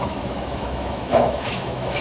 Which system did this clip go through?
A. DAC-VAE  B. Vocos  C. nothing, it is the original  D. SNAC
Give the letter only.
A